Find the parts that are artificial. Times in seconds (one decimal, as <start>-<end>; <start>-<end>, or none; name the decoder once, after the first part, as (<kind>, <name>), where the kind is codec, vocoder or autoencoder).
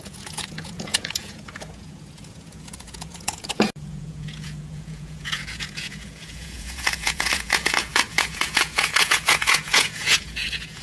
0.0-10.8 (vocoder, Vocos)